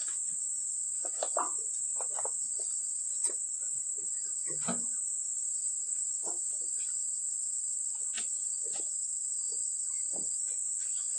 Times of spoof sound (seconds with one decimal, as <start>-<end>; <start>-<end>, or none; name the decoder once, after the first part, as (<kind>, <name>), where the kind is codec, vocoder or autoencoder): 3.2-4.4 (vocoder, Vocos); 5.2-6.4